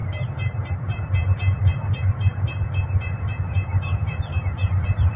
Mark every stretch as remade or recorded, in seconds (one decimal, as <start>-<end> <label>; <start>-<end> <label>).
0.0-1.0 remade; 1.0-1.6 recorded; 1.6-2.6 remade; 2.6-3.7 recorded; 3.7-4.4 remade; 4.4-5.2 recorded